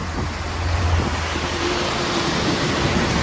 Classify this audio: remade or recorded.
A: remade